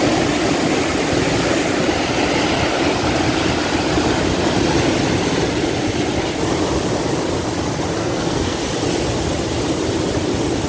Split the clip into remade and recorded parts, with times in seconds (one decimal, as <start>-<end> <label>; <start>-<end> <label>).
0.0-8.0 recorded; 8.0-8.6 remade; 8.6-10.7 recorded